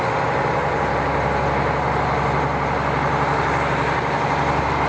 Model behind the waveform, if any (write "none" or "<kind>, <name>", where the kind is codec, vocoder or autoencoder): none